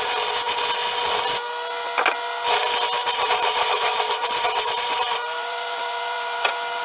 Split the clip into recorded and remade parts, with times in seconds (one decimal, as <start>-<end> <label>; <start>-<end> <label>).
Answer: 0.0-3.0 recorded; 3.0-6.8 remade